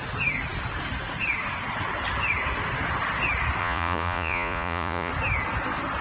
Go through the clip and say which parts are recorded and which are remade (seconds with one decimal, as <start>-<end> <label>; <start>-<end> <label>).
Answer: 0.0-3.6 recorded; 3.6-5.1 remade; 5.1-6.0 recorded